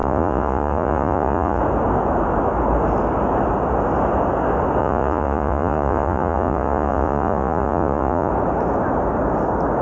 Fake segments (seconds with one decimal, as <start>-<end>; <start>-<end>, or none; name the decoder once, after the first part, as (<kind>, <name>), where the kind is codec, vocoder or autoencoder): 0.0-1.6 (vocoder, Vocos); 4.8-8.3